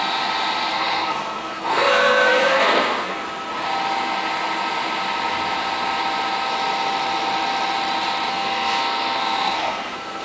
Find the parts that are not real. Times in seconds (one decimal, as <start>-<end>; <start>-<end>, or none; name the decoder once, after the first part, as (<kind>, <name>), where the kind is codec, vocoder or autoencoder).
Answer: 0.7-3.2 (codec, SNAC); 8.3-10.2